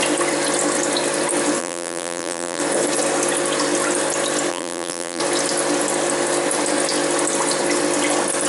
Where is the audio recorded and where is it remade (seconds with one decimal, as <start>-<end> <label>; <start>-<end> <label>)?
0.0-1.6 recorded; 1.6-2.6 remade; 2.6-4.5 recorded; 4.5-5.2 remade; 5.2-8.5 recorded